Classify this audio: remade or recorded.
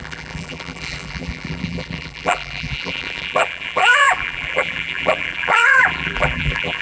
remade